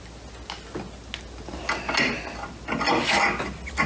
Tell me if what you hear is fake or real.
real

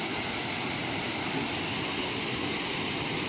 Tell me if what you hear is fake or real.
fake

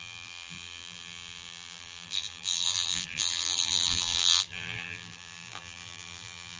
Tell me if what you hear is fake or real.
fake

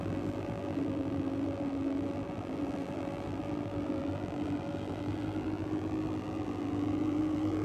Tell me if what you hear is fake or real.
fake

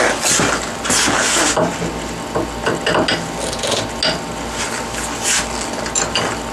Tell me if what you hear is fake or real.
real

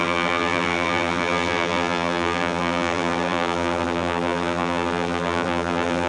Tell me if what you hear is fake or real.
fake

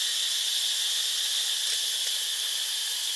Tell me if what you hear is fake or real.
real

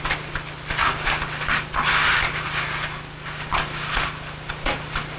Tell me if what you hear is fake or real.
real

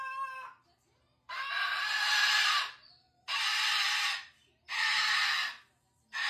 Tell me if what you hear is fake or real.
fake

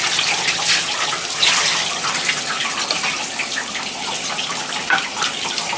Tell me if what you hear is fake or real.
fake